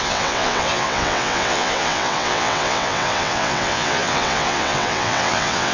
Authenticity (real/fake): fake